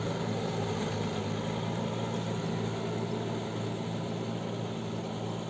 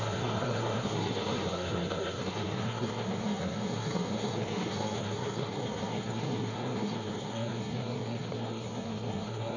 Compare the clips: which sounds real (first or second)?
first